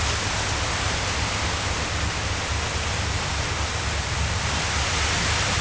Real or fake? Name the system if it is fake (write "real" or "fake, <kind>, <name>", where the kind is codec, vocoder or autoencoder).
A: real